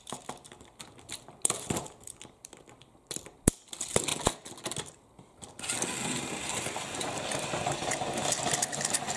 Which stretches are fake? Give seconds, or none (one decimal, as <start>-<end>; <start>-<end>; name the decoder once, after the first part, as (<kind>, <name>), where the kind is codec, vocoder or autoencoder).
none